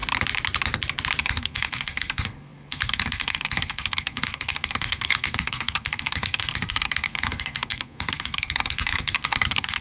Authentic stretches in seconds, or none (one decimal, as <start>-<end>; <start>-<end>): 0.0-1.2